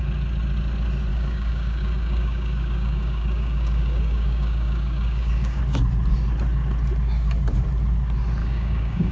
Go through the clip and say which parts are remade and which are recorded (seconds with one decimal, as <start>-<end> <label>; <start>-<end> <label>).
0.0-1.1 recorded; 1.1-5.6 remade; 5.6-8.4 recorded; 8.4-9.1 remade